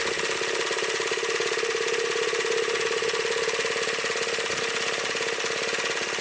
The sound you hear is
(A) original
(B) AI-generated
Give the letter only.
A